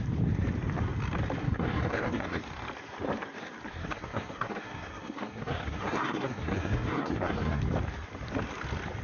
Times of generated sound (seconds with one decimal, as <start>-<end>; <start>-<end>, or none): 1.4-2.4; 3.8-7.6